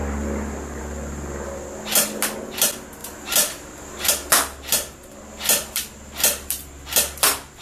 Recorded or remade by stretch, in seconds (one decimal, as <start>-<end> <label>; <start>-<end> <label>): 0.0-3.0 recorded; 3.0-4.1 remade; 4.1-7.6 recorded